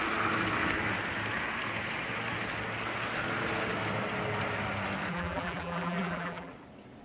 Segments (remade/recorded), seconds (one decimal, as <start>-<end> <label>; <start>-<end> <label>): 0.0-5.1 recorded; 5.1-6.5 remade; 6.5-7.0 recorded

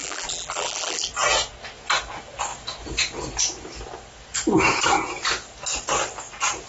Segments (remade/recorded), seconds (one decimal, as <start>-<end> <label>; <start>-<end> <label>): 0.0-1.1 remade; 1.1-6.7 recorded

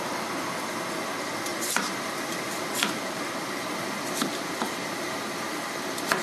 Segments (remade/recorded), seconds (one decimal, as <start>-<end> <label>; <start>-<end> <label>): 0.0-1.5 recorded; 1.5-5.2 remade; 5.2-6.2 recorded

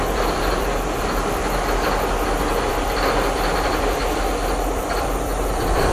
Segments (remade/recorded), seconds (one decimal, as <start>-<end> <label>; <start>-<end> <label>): 0.0-1.4 remade; 1.4-2.5 recorded; 2.5-5.3 remade; 5.3-5.9 recorded